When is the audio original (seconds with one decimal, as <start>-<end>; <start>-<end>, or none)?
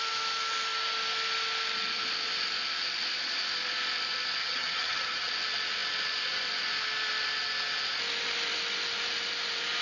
0.0-4.4; 5.3-9.8